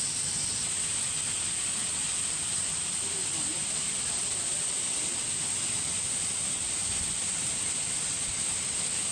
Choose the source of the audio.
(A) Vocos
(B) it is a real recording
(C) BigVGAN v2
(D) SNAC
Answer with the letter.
B